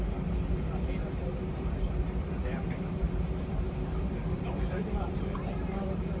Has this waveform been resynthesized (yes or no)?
yes